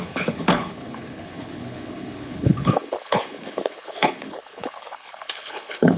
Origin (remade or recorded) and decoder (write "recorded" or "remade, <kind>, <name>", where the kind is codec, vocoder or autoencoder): remade, codec, HILCodec